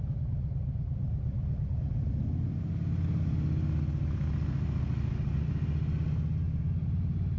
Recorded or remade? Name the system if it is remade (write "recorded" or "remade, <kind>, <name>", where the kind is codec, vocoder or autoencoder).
recorded